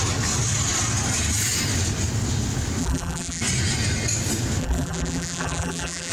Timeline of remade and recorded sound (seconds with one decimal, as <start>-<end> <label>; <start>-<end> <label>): 0.0-2.8 recorded; 2.8-3.4 remade; 3.4-4.6 recorded; 4.6-6.1 remade